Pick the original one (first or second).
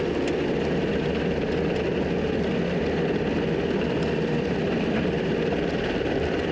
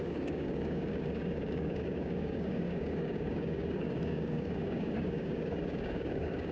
first